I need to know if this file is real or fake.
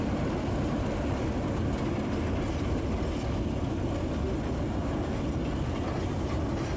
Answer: real